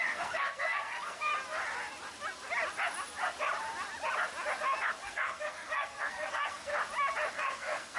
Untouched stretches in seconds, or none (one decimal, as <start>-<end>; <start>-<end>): 1.3-5.0; 6.7-7.3